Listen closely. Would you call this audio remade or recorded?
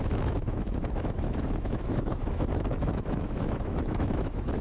remade